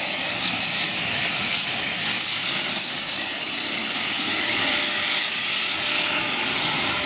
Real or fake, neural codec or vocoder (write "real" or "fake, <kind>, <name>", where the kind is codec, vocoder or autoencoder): fake, codec, DAC